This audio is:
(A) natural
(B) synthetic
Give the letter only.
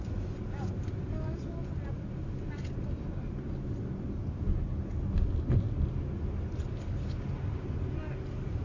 A